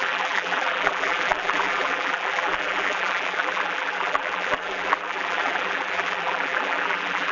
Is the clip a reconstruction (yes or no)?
yes